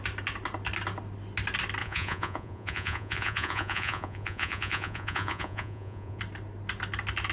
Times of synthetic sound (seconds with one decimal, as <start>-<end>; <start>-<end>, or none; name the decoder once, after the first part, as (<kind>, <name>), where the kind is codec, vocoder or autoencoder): 1.8-6.2 (vocoder, Vocos)